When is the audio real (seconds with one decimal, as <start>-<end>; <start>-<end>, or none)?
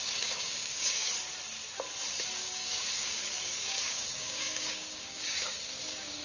1.1-2.4